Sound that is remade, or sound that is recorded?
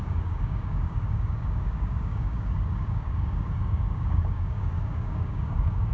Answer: remade